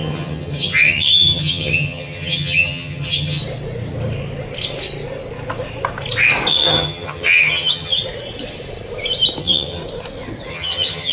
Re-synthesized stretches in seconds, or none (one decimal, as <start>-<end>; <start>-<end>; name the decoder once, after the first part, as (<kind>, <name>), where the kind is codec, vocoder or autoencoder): 0.0-3.4 (vocoder, HiFi-GAN); 6.5-8.0; 9.4-9.8; 10.5-11.1